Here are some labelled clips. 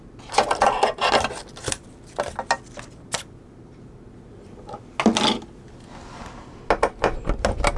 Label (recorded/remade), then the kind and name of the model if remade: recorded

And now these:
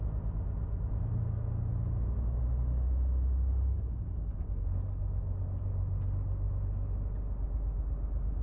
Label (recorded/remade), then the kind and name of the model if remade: recorded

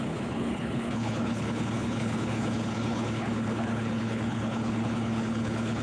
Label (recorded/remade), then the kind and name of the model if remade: remade, codec, HILCodec